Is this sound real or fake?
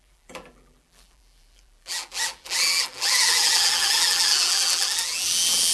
fake